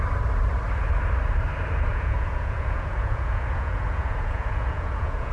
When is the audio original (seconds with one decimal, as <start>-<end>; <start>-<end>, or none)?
0.0-1.9